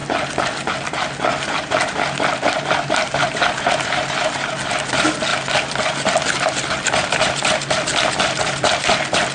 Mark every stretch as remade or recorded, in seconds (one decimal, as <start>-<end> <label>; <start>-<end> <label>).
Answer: 0.0-9.3 recorded